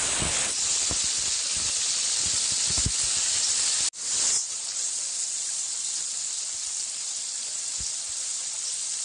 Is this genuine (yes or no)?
yes